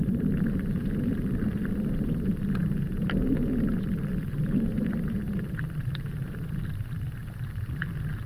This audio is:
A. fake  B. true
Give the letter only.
A